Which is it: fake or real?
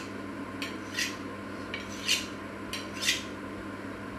real